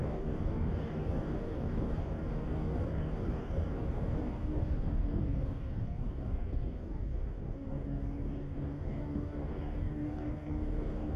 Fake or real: fake